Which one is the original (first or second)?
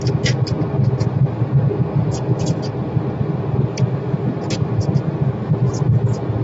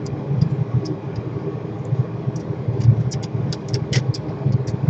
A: first